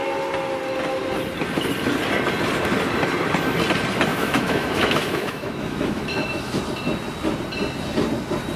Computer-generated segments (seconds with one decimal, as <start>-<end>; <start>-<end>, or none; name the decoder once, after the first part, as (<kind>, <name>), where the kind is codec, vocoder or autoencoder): 4.1-6.6 (autoencoder, DAC-VAE)